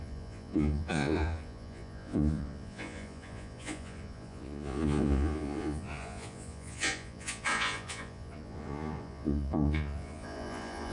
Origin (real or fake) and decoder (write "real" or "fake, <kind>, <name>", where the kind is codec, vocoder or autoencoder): fake, vocoder, Vocos